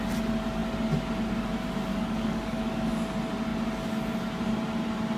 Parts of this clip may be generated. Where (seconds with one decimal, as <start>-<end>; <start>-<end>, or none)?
1.9-2.9